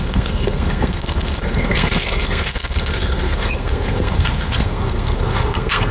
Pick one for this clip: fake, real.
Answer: fake